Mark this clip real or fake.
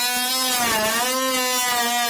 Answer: real